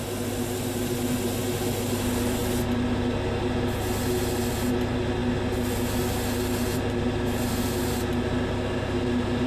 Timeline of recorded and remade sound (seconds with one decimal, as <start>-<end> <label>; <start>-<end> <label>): 0.0-9.5 recorded

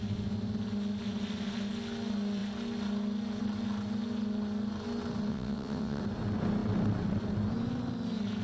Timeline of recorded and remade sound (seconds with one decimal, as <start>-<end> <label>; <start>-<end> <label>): 0.0-5.3 recorded; 5.3-6.0 remade; 6.0-8.4 recorded

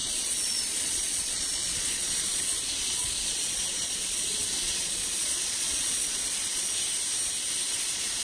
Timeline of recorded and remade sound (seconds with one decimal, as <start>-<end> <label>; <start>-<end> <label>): 0.0-6.7 remade; 6.7-7.7 recorded; 7.7-8.2 remade

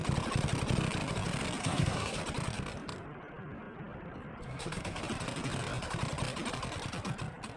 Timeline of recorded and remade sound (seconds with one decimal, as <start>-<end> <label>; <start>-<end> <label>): 0.0-1.6 recorded; 1.6-2.2 remade; 2.2-4.4 recorded; 4.4-5.0 remade; 5.0-7.6 recorded

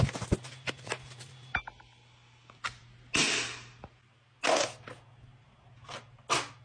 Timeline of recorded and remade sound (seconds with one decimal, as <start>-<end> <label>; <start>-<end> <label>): 0.0-6.6 recorded

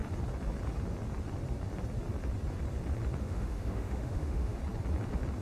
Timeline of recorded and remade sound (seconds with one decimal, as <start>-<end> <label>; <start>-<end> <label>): 0.0-3.2 recorded; 3.2-4.6 remade; 4.6-5.4 recorded

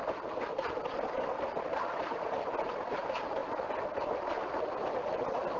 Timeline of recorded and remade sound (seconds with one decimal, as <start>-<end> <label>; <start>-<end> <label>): 0.0-5.6 recorded

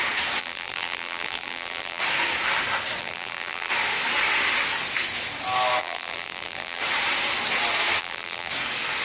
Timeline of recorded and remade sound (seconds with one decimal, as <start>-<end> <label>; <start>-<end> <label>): 0.0-0.4 recorded; 0.4-2.0 remade; 2.0-3.0 recorded; 3.0-3.7 remade; 3.7-5.8 recorded; 5.8-6.8 remade; 6.8-8.0 recorded; 8.0-8.5 remade; 8.5-9.0 recorded